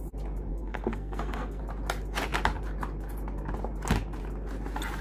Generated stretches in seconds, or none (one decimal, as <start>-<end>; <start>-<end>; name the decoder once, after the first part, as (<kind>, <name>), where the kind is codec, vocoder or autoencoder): 0.5-1.6 (codec, SNAC)